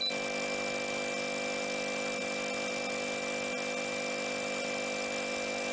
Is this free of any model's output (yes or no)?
yes